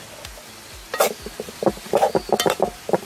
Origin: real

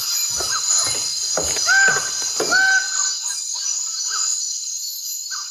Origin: real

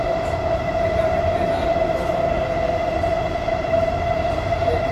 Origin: fake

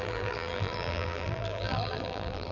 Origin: fake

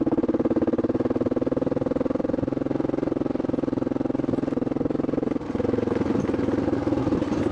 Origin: real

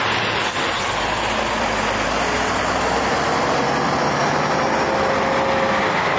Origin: real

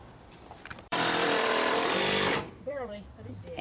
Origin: fake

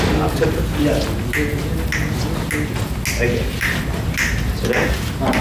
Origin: real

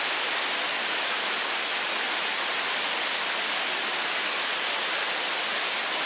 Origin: real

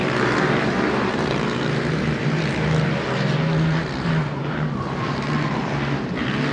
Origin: fake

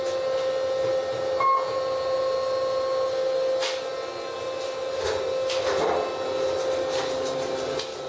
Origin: real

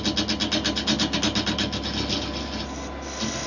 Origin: real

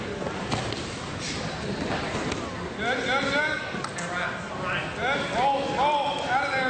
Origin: real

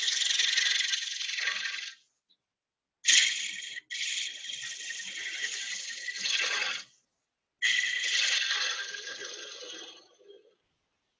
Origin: real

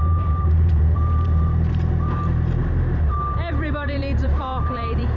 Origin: fake